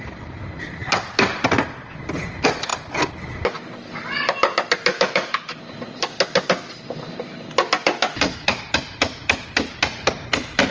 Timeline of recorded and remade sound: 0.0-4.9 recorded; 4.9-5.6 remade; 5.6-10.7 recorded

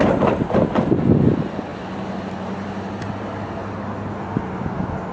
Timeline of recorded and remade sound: 0.0-5.1 recorded

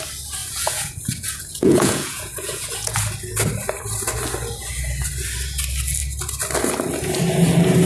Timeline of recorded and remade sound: 0.0-0.4 recorded; 0.4-3.0 remade; 3.0-7.9 recorded

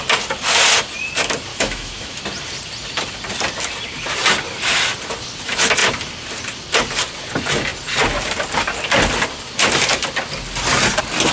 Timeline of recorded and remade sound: 0.0-1.5 recorded; 1.5-2.2 remade; 2.2-11.3 recorded

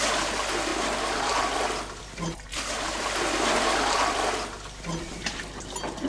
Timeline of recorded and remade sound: 0.0-6.1 recorded

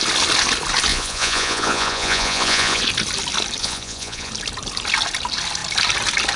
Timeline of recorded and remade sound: 0.0-0.9 recorded; 0.9-2.8 remade; 2.8-3.6 recorded; 3.6-4.3 remade; 4.3-6.4 recorded

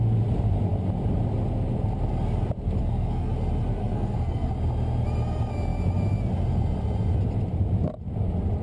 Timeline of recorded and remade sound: 0.0-2.8 recorded; 2.8-3.3 remade; 3.3-3.8 recorded; 3.8-4.5 remade; 4.5-8.6 recorded

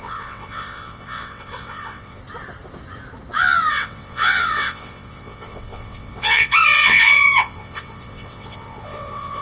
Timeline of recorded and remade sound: 0.0-2.2 remade; 2.2-3.7 recorded; 3.7-9.4 remade